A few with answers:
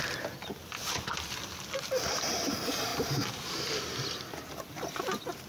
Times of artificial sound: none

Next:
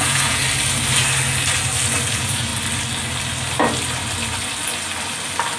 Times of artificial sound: 0.0-0.4; 2.1-2.5

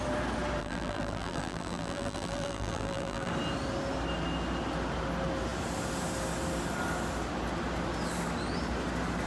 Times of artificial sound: 0.6-3.3

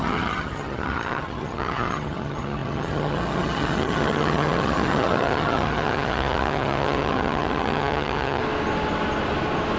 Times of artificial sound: 0.0-8.4

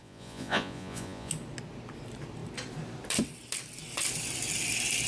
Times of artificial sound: 0.0-1.3

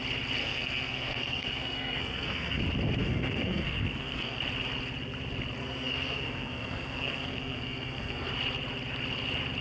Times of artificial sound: 0.4-2.6; 3.0-4.4; 5.6-8.3

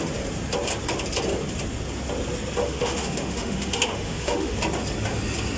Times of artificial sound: 2.6-4.6